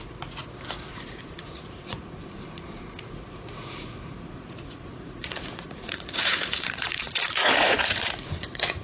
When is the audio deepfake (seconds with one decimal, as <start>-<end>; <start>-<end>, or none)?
0.0-0.4; 0.9-8.8